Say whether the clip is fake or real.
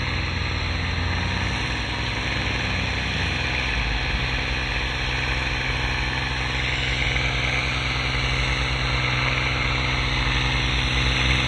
real